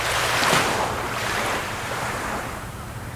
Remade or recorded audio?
remade